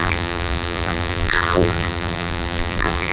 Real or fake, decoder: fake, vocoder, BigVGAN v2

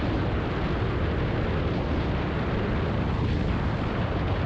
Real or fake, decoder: real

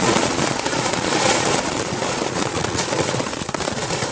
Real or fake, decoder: fake, vocoder, Vocos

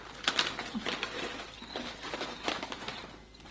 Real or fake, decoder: real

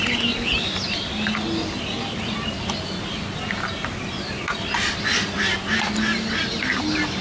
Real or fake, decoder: real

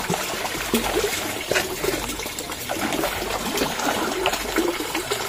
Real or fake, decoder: real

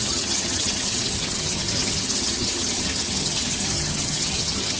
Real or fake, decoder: fake, vocoder, HiFi-GAN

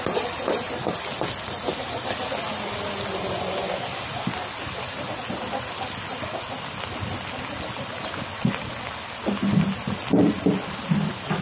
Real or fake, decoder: real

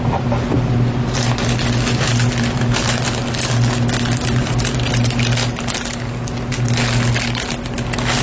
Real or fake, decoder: real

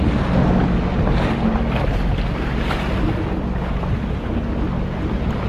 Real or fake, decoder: real